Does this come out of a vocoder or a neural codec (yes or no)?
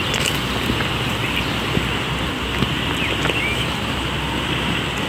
no